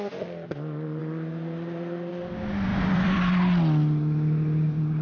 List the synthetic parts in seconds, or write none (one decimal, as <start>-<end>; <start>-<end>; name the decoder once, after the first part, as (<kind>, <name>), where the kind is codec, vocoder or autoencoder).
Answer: 2.7-3.3 (vocoder, BigVGAN v2)